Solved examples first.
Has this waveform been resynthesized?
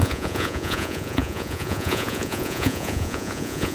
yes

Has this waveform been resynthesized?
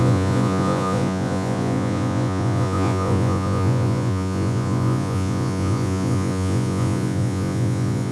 yes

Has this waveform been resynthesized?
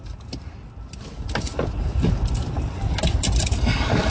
no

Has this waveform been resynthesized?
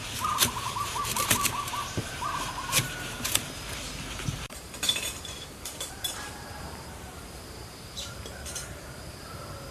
yes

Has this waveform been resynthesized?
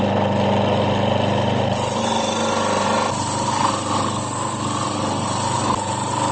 no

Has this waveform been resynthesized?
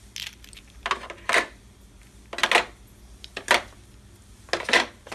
no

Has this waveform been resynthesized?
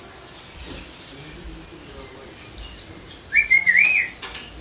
no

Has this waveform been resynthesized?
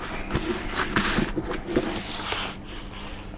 no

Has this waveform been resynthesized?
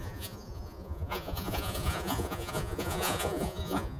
yes